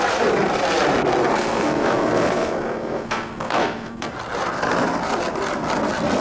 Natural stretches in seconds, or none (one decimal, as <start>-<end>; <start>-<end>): 0.0-1.4; 4.1-6.2